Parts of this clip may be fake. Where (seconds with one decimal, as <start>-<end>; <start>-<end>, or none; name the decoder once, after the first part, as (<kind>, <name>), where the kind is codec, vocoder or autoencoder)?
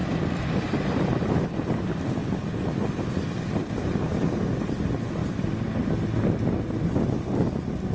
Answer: 0.0-0.9 (vocoder, BigVGAN v2)